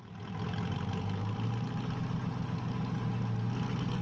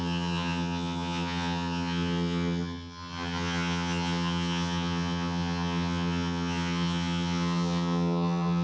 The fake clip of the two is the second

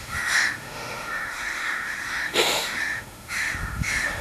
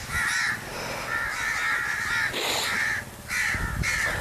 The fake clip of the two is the first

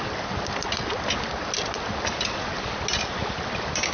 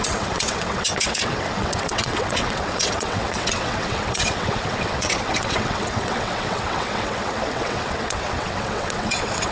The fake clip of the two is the second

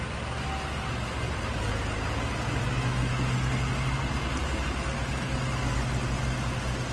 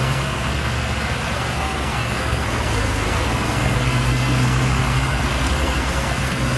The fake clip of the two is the second